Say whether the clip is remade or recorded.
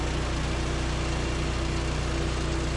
recorded